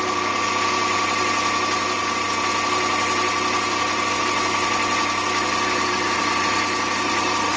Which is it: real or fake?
real